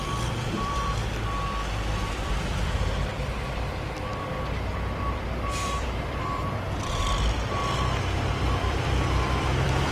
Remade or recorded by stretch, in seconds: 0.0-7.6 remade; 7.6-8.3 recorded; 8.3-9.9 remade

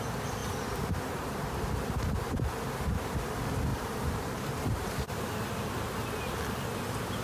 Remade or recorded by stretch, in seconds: 0.0-3.7 recorded; 3.7-5.2 remade; 5.2-7.2 recorded

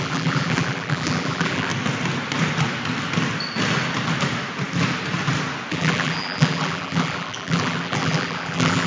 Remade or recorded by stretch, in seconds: 0.0-1.7 remade; 1.7-5.7 recorded; 5.7-8.9 remade

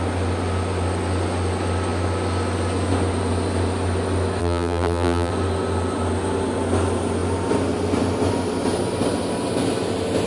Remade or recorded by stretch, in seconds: 0.0-4.4 recorded; 4.4-5.3 remade; 5.3-10.3 recorded

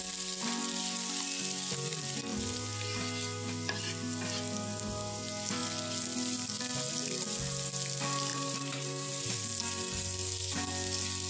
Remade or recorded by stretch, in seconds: 0.0-8.3 recorded; 8.3-9.1 remade; 9.1-11.3 recorded

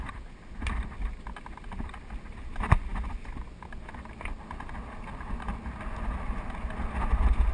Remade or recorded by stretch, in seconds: 0.0-7.5 recorded

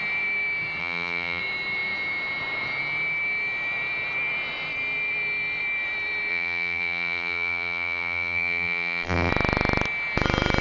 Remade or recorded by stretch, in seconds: 0.0-0.8 recorded; 0.8-1.4 remade; 1.4-6.3 recorded; 6.3-9.3 remade; 9.3-10.6 recorded

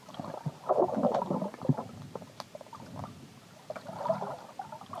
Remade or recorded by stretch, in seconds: 0.0-3.0 remade; 3.0-5.0 recorded